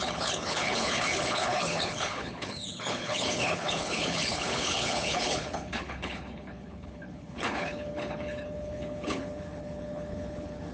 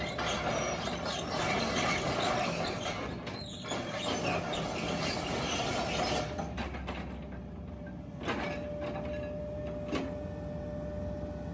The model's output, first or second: first